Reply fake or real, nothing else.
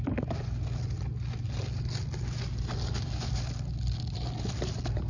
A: real